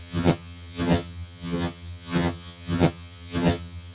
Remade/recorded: remade